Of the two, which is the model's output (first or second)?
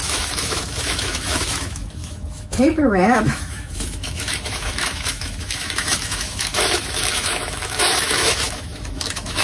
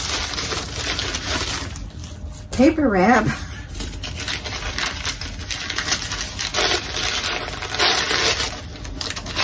first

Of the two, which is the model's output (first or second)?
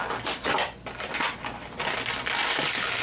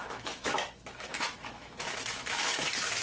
second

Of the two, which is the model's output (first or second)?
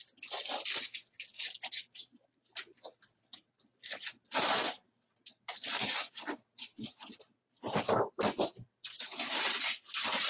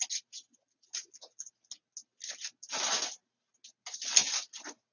first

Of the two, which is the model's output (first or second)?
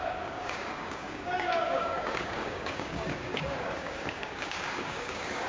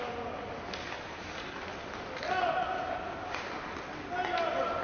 first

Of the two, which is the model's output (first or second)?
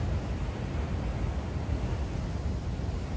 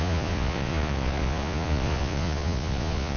second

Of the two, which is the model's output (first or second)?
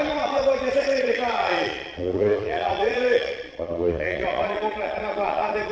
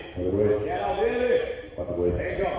first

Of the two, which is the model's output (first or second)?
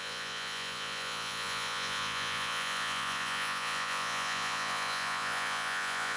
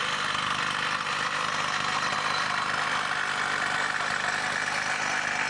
first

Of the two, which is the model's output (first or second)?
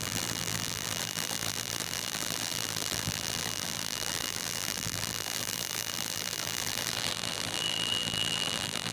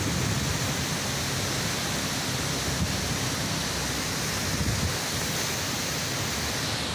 first